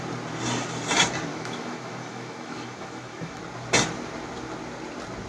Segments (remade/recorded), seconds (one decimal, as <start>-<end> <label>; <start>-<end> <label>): 0.0-1.3 recorded; 1.3-3.4 remade; 3.4-5.3 recorded